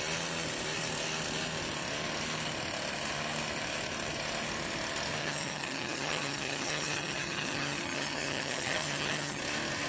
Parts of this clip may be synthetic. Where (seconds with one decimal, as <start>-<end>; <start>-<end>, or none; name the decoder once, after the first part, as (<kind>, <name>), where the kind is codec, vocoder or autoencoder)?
5.2-9.4 (vocoder, HiFi-GAN)